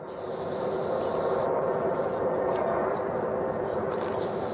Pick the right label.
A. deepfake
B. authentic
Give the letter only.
B